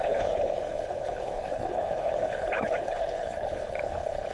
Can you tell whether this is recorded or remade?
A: remade